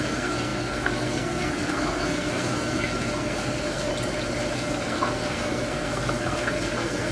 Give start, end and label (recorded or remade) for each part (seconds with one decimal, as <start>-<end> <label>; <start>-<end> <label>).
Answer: 0.0-3.9 remade; 3.9-4.5 recorded; 4.5-7.1 remade